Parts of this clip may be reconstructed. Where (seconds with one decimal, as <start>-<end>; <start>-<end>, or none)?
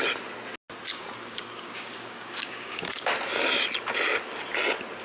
0.9-3.1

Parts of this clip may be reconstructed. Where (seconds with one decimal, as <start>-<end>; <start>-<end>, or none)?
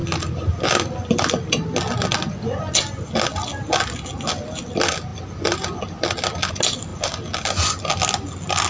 none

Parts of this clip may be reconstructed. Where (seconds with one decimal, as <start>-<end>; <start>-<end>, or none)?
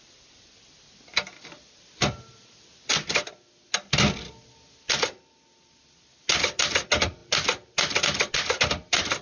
none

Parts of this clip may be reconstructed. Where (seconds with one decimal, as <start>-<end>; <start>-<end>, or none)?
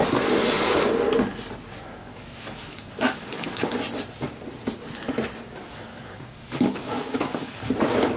2.0-3.7; 5.7-7.7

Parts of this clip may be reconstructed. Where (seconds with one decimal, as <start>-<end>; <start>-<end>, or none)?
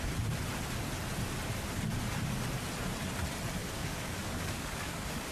3.6-5.3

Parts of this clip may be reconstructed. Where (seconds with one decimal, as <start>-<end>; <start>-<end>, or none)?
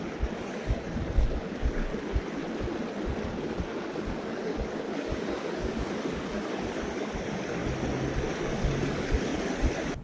0.0-1.9; 3.0-7.6; 8.3-9.3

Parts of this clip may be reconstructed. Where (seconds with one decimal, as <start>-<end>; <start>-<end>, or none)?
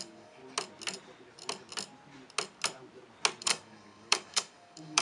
0.0-0.4; 3.4-5.0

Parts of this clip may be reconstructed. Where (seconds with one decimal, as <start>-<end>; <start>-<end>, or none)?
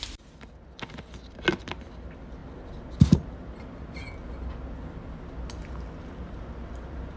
none